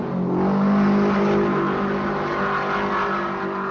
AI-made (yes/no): no